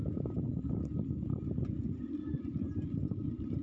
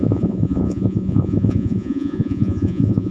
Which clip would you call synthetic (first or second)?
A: second